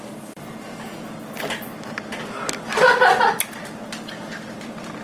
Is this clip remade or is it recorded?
recorded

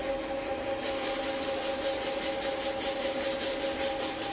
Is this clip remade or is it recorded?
recorded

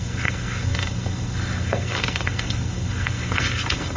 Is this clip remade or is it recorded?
remade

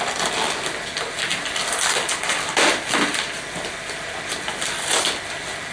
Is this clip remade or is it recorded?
recorded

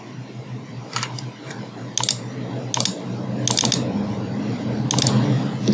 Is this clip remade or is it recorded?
recorded